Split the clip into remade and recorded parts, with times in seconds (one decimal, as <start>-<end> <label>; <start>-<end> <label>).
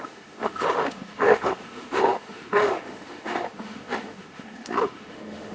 0.0-5.5 remade